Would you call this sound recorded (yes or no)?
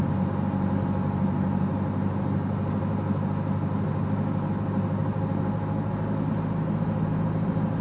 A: yes